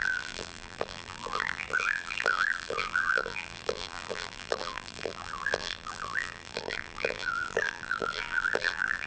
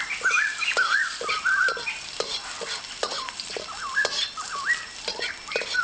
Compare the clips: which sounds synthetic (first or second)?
first